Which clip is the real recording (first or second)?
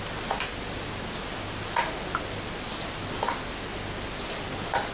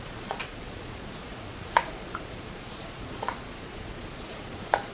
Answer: first